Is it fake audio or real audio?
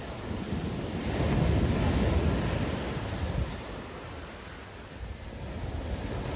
real